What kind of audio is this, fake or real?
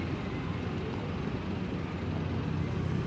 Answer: real